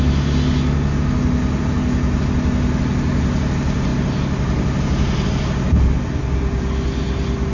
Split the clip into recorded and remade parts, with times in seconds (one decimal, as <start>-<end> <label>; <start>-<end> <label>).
0.0-7.5 recorded